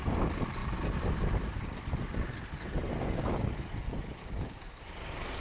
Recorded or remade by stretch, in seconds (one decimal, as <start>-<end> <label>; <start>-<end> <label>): 0.0-4.2 recorded; 4.2-5.4 remade